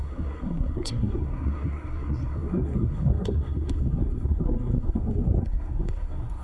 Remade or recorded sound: remade